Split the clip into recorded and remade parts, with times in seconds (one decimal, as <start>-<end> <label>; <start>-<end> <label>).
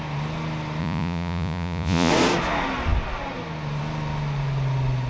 0.0-0.8 recorded; 0.8-2.1 remade; 2.1-5.1 recorded